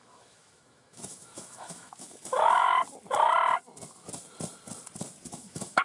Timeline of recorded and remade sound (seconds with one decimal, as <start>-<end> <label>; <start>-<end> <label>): 0.0-2.8 remade; 2.8-5.3 recorded; 5.3-5.8 remade